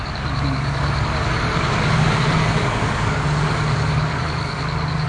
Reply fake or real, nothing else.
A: fake